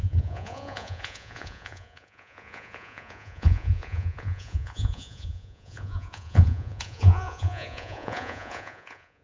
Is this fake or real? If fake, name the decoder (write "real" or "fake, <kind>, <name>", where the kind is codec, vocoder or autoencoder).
fake, vocoder, Vocos